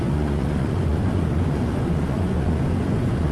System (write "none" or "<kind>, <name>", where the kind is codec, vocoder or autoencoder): vocoder, Vocos